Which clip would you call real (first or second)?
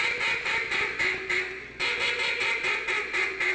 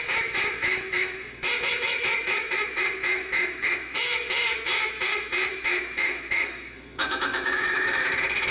first